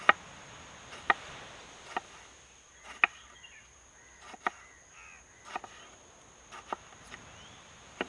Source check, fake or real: real